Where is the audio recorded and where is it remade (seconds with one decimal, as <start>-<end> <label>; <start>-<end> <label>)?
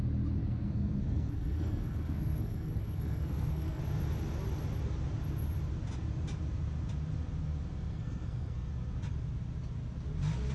0.0-0.4 recorded; 0.4-3.8 remade; 3.8-7.9 recorded; 7.9-8.7 remade; 8.7-10.5 recorded